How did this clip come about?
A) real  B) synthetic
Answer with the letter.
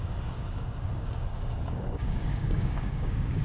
B